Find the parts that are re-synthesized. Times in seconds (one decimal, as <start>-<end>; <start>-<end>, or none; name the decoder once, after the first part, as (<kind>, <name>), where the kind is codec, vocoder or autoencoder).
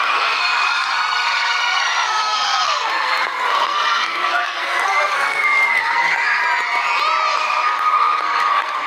0.0-6.4 (codec, SNAC); 7.3-8.9